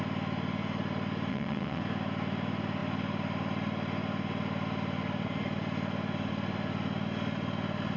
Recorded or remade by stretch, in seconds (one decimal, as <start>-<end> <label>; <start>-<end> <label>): 0.0-1.3 recorded; 1.3-1.8 remade; 1.8-8.0 recorded